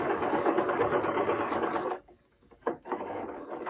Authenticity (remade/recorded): remade